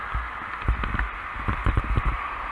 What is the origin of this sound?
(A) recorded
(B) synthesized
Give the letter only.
A